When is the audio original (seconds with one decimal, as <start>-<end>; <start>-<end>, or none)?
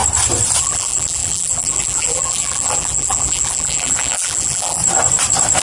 0.0-0.6; 4.8-5.6